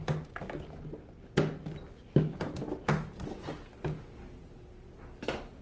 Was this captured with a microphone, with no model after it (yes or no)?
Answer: yes